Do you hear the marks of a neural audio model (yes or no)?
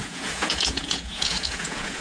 yes